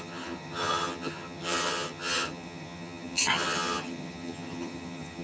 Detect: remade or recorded remade